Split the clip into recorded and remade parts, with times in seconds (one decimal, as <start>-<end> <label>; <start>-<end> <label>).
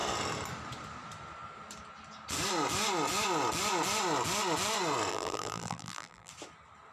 0.0-5.1 recorded; 5.1-6.3 remade; 6.3-6.9 recorded